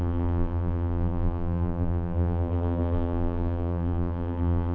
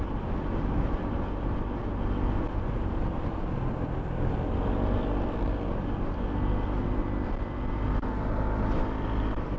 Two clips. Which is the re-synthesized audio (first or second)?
first